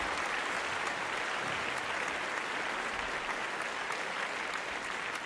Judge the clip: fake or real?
real